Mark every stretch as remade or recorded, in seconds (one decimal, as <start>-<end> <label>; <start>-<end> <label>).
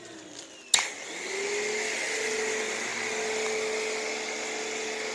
0.0-5.1 recorded